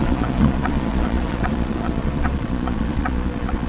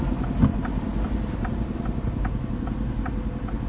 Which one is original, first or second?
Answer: second